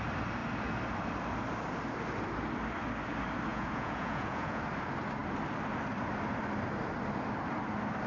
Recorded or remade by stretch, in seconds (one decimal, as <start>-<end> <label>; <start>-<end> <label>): 0.0-3.5 recorded; 3.5-4.6 remade; 4.6-8.1 recorded